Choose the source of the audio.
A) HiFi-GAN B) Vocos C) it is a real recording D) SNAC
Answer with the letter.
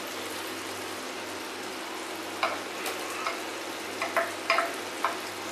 C